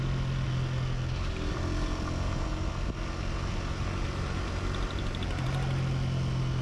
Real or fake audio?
real